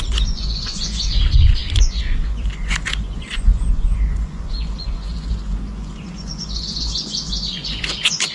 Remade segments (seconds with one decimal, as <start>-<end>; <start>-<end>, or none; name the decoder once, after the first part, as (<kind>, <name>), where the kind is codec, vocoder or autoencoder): 0.0-8.3 (vocoder, Vocos)